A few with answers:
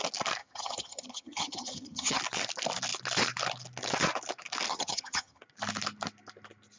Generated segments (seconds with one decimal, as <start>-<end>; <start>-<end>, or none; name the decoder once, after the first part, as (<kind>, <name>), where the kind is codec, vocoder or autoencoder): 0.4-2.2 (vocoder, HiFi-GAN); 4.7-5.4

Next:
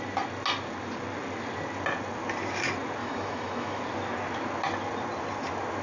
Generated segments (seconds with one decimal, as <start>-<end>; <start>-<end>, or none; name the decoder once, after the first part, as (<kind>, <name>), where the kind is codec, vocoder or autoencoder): 3.0-3.8 (autoencoder, DAC-VAE)

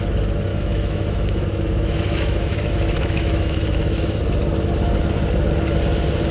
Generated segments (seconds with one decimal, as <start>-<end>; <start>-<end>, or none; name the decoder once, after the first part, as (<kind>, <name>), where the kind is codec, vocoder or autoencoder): 0.5-4.2 (autoencoder, DAC-VAE)

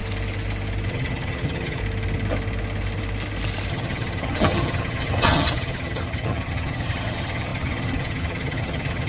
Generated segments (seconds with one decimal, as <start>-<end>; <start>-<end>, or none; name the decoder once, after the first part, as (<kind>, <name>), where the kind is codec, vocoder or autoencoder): 0.9-1.8 (vocoder, HiFi-GAN); 3.7-9.1

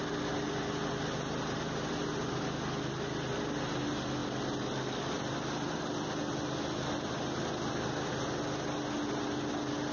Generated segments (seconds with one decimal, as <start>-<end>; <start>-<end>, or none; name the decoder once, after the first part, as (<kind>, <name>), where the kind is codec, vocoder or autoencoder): none

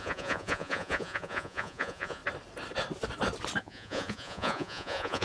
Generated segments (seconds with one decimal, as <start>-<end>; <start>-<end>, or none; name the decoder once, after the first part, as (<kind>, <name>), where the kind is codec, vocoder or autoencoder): 0.0-2.2 (vocoder, Vocos); 3.6-5.2

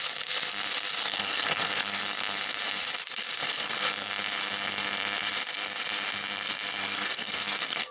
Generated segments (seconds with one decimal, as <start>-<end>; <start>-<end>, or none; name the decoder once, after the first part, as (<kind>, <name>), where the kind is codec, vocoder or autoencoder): 1.0-2.0 (codec, SNAC); 3.5-4.1; 6.8-7.9

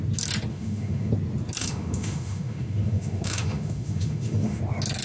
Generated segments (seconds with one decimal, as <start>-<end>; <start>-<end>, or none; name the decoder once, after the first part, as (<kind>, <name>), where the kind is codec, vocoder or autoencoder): 0.5-1.1 (autoencoder, DAC-VAE); 1.6-4.6